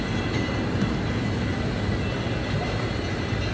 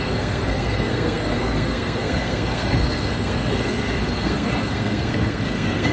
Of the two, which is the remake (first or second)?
second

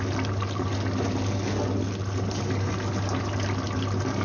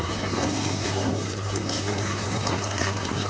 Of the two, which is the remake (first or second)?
second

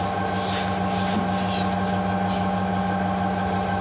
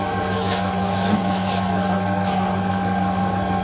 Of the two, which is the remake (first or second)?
second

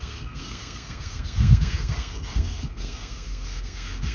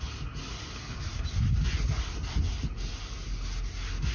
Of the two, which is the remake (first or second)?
first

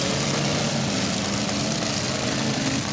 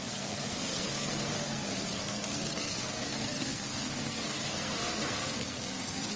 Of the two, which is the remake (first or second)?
second